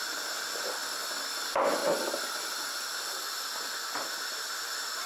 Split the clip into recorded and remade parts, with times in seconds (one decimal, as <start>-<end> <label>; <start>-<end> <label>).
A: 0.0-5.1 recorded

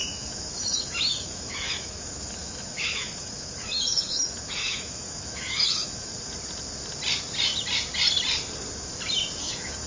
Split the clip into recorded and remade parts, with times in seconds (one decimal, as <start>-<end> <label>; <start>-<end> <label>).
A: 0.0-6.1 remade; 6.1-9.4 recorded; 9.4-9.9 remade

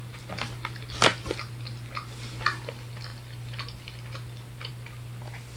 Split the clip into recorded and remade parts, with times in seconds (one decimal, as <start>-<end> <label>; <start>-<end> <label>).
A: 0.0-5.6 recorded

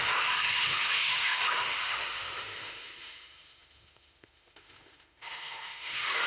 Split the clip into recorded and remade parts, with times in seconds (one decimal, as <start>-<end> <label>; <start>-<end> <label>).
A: 0.0-6.3 remade